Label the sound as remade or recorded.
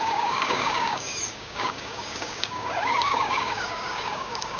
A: remade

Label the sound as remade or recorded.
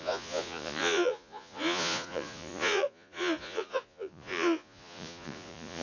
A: remade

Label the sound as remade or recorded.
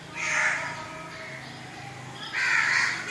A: recorded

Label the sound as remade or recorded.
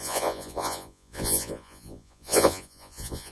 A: remade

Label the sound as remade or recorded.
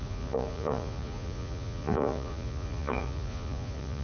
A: remade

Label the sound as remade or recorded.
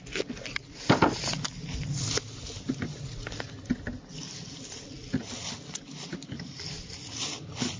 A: recorded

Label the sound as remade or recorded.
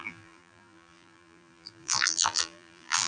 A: remade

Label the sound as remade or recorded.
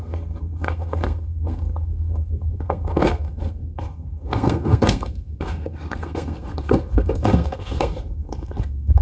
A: remade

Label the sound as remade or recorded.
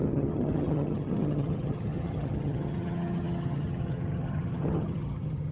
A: remade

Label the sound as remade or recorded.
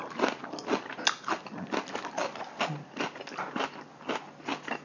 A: recorded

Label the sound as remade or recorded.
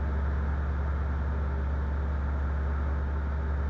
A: recorded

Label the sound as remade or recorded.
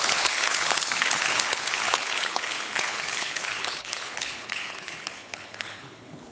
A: remade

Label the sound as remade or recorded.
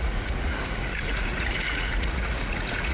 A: remade